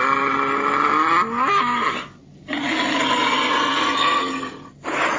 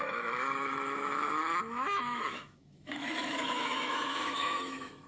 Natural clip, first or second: first